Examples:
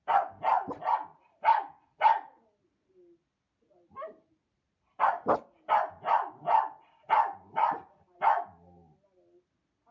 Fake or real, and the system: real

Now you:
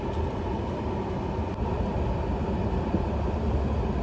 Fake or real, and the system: real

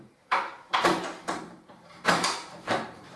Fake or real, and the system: fake, vocoder, BigVGAN v2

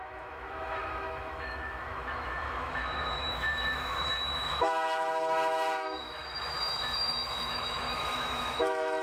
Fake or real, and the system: fake, autoencoder, DAC-VAE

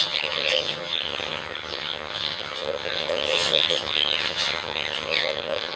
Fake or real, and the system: fake, vocoder, HiFi-GAN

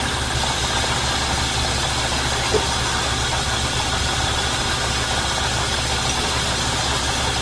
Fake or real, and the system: real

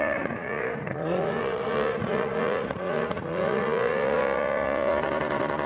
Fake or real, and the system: fake, vocoder, Vocos